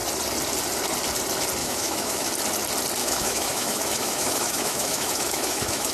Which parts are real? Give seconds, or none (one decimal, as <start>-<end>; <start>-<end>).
0.0-1.6; 2.3-3.0